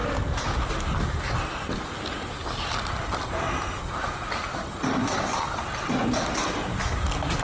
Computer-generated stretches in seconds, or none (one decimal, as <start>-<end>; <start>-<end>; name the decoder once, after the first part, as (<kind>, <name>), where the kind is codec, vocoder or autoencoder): none